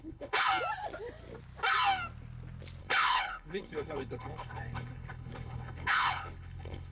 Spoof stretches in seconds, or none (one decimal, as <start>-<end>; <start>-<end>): 0.0-0.5; 2.8-6.9